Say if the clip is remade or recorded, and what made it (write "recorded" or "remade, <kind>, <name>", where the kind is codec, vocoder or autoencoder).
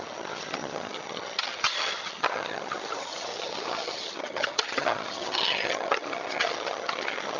remade, vocoder, HiFi-GAN